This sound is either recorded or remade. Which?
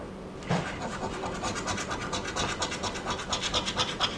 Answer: recorded